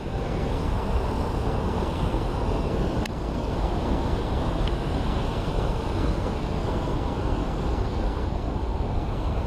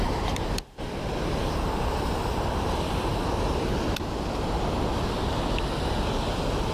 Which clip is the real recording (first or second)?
second